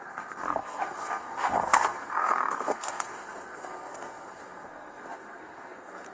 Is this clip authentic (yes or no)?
no